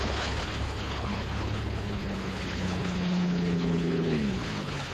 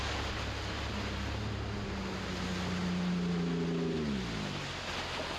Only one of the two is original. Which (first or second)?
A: second